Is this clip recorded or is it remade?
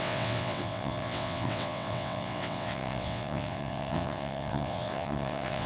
remade